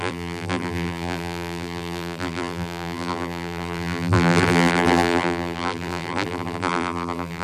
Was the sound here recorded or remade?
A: remade